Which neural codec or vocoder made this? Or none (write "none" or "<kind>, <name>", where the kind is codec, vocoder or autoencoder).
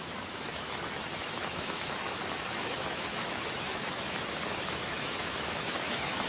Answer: autoencoder, DAC-VAE